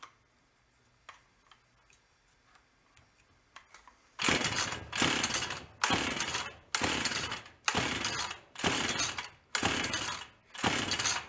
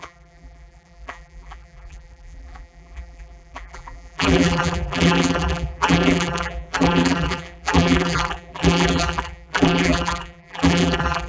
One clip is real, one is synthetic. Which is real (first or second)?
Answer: first